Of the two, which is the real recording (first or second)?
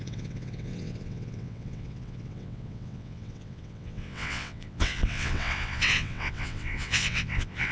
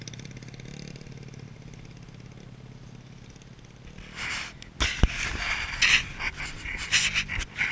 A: second